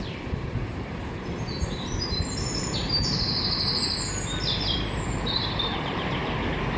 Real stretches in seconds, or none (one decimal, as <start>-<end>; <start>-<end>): 6.2-6.8